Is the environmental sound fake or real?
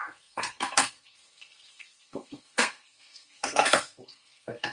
fake